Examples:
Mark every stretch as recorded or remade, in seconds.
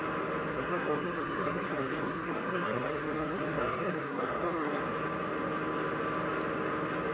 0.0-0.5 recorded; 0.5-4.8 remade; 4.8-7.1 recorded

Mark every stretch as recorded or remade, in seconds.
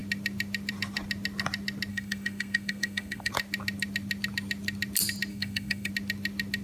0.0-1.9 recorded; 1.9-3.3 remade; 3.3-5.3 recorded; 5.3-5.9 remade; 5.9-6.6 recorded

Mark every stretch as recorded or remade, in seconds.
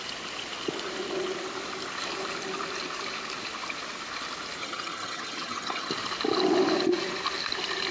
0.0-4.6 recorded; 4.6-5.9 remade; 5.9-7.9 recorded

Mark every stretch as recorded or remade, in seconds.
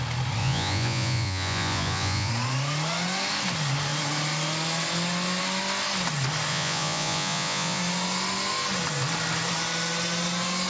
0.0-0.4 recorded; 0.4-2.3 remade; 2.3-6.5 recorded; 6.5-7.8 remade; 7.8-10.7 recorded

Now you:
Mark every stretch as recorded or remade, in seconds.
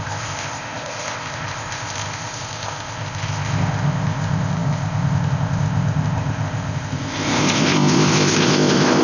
0.0-9.0 remade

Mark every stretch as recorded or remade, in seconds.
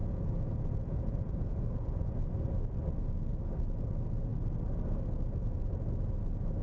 0.0-2.0 remade; 2.0-6.6 recorded